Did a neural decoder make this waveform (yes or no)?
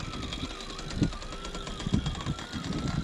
no